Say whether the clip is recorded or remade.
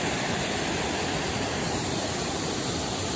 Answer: remade